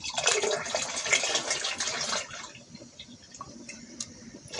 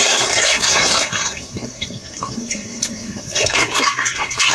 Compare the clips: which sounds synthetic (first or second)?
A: second